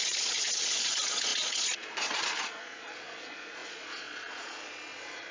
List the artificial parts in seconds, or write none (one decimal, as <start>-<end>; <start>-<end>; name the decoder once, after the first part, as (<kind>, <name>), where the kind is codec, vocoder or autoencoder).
0.0-5.3 (vocoder, Vocos)